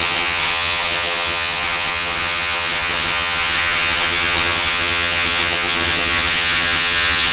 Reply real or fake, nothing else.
fake